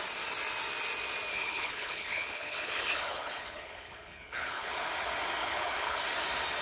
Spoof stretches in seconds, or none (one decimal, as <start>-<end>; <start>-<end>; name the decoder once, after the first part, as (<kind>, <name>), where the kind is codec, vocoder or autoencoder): 1.3-4.7 (codec, HILCodec); 5.4-6.0